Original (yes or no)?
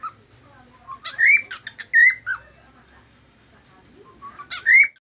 yes